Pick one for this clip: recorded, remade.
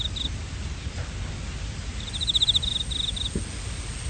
recorded